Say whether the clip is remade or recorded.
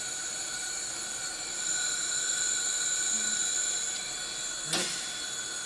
recorded